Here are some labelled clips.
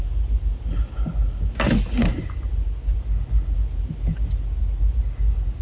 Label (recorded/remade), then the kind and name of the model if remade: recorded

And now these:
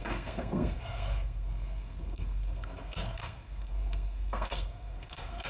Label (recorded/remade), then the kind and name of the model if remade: remade, codec, SNAC